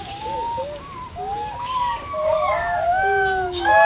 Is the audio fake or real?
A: fake